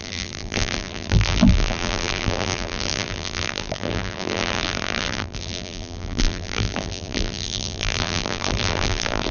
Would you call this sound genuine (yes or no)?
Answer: no